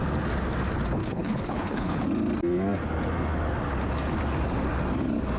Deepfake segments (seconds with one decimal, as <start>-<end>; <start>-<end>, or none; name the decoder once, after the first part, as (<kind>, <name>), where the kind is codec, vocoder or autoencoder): 1.0-2.0 (codec, HILCodec)